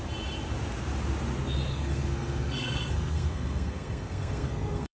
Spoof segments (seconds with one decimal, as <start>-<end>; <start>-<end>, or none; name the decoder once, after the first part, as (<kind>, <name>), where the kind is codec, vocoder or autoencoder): 1.7-5.0 (codec, SNAC)

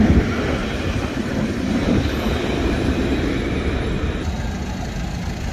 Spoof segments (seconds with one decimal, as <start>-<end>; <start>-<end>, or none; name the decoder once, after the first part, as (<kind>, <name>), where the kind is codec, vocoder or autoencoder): 0.6-3.9 (vocoder, BigVGAN v2)

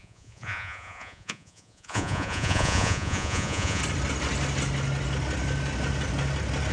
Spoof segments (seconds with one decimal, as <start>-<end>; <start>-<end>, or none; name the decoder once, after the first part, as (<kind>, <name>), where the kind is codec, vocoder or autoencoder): 0.0-3.8 (vocoder, Vocos)

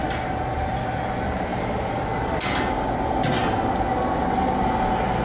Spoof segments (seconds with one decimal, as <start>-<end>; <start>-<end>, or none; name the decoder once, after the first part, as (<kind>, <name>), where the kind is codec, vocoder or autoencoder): none

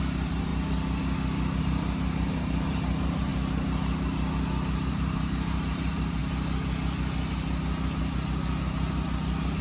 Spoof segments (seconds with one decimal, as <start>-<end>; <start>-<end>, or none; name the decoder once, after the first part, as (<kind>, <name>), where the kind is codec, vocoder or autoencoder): 0.0-0.5 (vocoder, BigVGAN v2); 1.6-3.3; 4.9-6.2

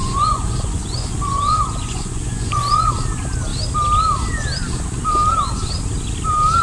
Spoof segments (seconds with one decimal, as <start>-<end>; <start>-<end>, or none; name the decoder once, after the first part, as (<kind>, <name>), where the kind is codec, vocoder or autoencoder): 0.0-2.9 (vocoder, Vocos)

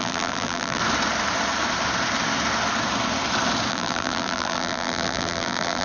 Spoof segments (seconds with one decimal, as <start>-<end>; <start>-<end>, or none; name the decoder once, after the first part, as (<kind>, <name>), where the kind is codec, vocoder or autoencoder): 0.0-0.8 (vocoder, BigVGAN v2); 3.7-5.8

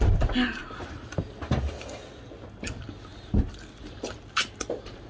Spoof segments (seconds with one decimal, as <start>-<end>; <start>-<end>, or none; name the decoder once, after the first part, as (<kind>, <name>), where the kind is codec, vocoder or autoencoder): 3.1-3.7 (vocoder, BigVGAN v2)